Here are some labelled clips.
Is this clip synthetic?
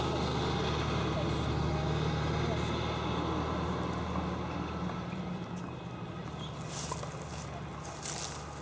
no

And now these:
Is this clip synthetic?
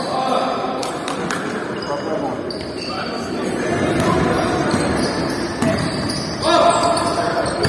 yes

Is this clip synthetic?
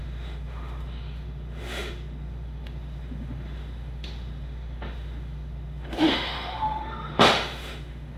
yes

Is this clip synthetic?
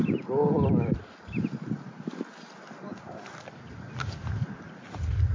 no